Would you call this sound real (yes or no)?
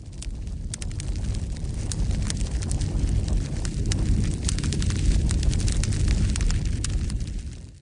no